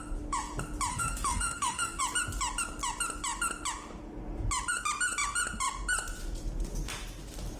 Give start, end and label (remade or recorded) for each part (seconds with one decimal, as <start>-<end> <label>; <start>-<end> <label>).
0.0-0.9 recorded; 0.9-2.0 remade; 2.0-7.6 recorded

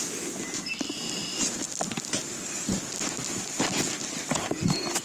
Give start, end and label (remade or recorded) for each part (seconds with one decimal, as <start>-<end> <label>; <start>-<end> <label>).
0.0-5.0 recorded

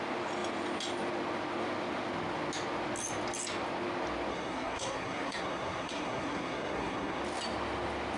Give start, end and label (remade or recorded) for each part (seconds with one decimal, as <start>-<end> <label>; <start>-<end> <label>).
0.0-4.3 recorded; 4.3-7.2 remade; 7.2-8.2 recorded

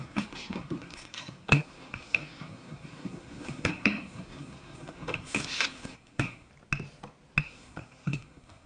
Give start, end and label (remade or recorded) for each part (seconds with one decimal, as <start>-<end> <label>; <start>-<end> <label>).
0.0-6.5 remade; 6.5-7.4 recorded; 7.4-8.7 remade

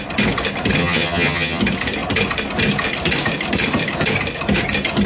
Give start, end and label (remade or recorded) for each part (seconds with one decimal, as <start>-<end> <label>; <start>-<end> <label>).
0.0-0.8 recorded; 0.8-1.6 remade; 1.6-5.1 recorded

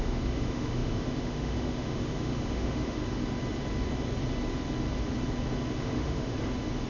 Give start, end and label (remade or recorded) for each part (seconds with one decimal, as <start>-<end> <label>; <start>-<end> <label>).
0.0-3.0 remade; 3.0-5.8 recorded; 5.8-6.3 remade; 6.3-6.9 recorded

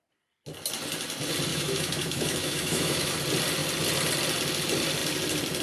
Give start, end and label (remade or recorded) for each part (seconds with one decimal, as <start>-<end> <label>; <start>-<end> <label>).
0.0-1.5 recorded; 1.5-3.1 remade; 3.1-5.6 recorded

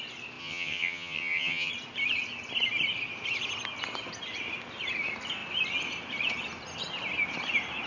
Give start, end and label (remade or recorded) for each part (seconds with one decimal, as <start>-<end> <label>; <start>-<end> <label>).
0.0-0.4 recorded; 0.4-1.7 remade; 1.7-7.9 recorded